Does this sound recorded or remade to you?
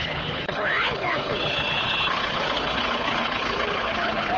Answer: remade